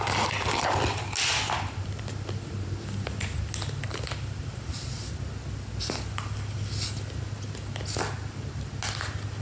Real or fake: real